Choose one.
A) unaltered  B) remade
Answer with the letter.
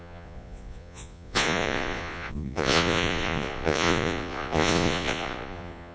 B